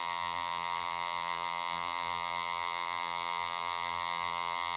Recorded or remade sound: remade